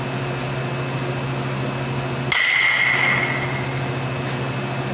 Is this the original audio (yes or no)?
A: yes